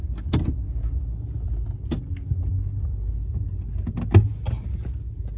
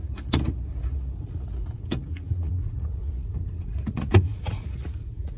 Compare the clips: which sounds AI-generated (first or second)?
second